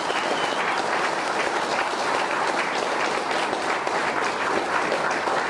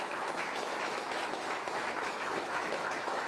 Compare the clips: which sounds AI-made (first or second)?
second